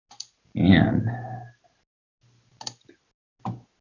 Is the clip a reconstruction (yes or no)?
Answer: no